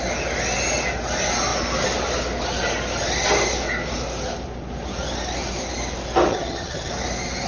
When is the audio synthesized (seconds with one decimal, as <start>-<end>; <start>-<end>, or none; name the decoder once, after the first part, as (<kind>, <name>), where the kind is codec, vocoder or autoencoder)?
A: 6.3-6.9 (vocoder, HiFi-GAN)